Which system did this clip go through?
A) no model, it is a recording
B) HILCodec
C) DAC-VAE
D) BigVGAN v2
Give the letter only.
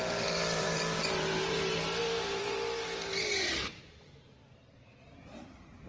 D